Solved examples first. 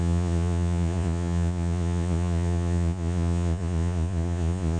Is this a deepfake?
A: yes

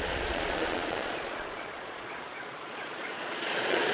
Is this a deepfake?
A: yes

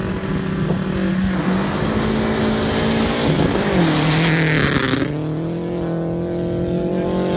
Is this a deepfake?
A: no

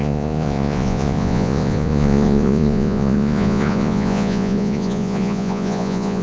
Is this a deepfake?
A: yes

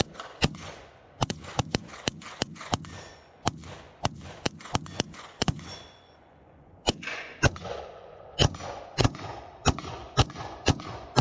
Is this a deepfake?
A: yes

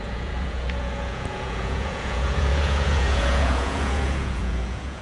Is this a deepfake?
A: yes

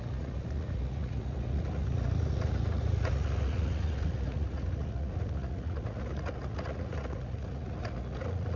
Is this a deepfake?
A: yes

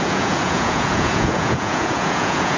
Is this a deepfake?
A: yes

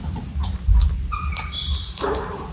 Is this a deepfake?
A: no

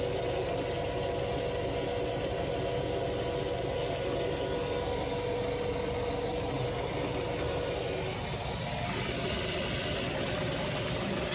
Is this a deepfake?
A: no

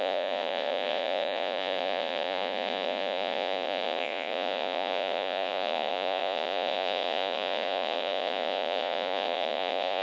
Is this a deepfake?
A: yes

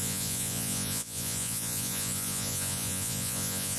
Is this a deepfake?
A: yes